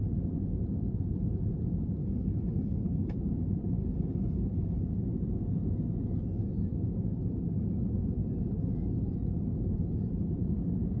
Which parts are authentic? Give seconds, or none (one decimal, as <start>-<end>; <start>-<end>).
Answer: 0.0-2.0; 3.1-3.8; 4.8-11.0